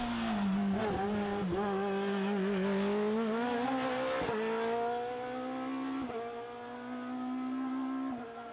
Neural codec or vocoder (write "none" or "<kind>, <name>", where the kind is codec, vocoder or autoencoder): none